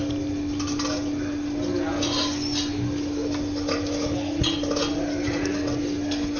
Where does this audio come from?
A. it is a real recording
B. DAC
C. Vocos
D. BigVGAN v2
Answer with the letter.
A